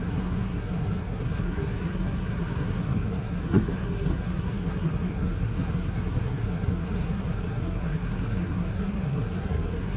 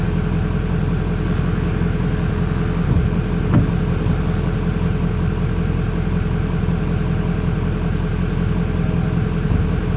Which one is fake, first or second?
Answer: first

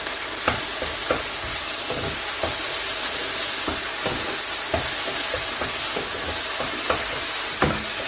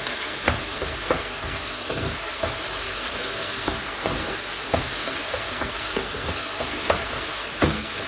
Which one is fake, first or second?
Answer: second